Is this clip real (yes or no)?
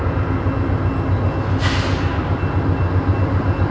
yes